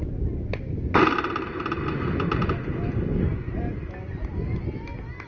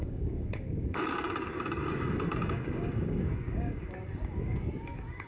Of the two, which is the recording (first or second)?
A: first